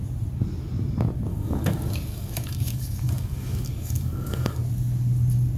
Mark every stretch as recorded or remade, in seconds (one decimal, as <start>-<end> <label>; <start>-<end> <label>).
0.0-1.3 recorded; 1.3-4.6 remade; 4.6-5.6 recorded